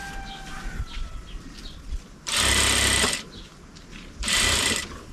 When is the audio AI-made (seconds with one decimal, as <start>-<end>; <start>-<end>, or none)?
0.8-1.6; 4.2-5.1